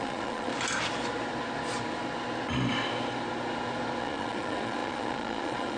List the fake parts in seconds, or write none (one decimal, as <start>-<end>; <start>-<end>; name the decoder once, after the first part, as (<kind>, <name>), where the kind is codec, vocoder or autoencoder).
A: 0.0-0.5 (vocoder, Vocos); 4.0-5.8